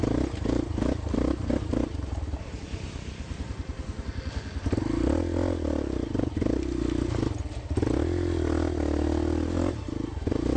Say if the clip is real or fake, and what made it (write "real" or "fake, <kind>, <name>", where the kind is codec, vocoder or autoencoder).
real